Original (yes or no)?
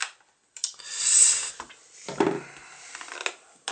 yes